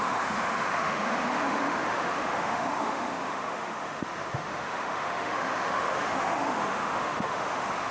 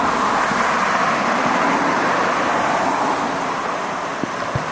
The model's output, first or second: first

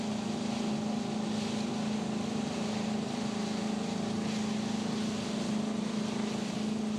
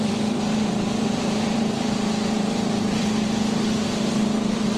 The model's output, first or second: second